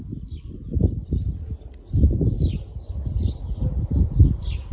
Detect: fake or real real